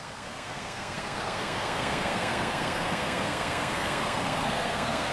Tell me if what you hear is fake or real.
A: fake